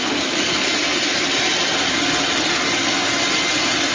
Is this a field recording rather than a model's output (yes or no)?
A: yes